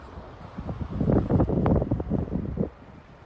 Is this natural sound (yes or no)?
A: yes